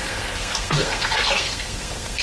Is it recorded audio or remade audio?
remade